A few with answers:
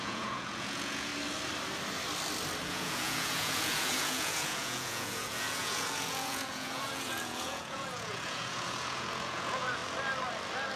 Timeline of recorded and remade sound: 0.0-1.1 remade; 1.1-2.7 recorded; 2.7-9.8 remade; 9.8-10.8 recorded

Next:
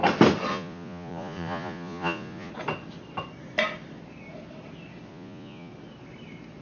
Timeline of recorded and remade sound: 0.0-0.5 recorded; 0.5-2.5 remade; 2.5-5.1 recorded; 5.1-5.7 remade; 5.7-6.6 recorded

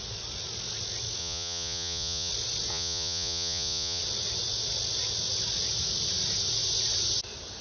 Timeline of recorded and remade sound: 0.0-1.2 recorded; 1.2-2.3 remade; 2.3-2.7 recorded; 2.7-4.0 remade; 4.0-7.6 recorded